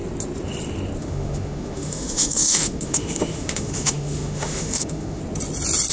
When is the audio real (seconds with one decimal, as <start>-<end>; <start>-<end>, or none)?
0.0-1.0; 5.2-5.9